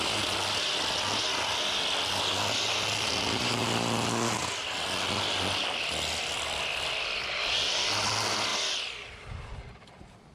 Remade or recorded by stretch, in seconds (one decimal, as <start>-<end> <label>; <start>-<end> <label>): 0.0-10.3 recorded